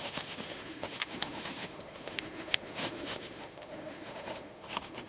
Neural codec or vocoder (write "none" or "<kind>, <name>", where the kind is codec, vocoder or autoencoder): autoencoder, DAC-VAE